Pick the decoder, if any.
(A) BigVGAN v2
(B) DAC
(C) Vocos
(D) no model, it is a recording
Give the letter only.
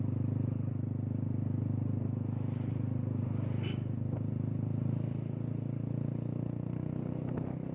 D